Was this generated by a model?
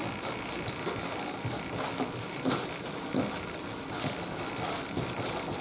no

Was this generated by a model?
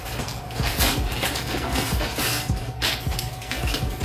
yes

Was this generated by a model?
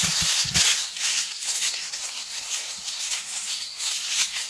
yes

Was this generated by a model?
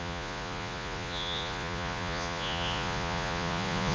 yes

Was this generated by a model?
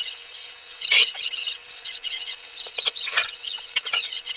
yes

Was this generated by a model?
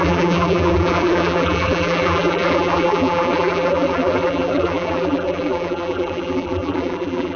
yes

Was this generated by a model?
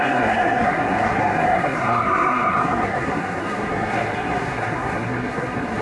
yes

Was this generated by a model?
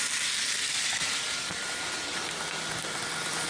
yes